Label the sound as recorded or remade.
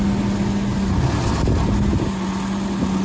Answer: recorded